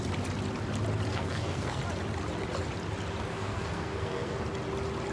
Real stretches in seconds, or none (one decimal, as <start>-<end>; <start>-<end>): 0.0-1.1; 1.8-3.3; 4.4-5.1